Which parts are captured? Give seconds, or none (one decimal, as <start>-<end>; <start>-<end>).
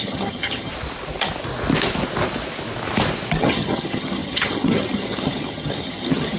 0.7-3.4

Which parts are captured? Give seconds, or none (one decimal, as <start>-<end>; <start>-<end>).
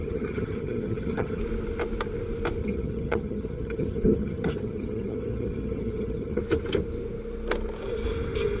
1.4-2.6; 6.4-8.6